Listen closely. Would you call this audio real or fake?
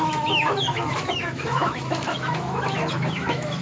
fake